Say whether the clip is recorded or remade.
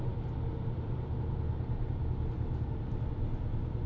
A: recorded